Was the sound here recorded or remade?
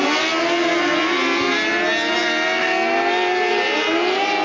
recorded